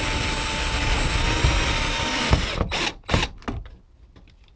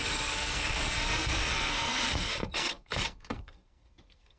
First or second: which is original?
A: first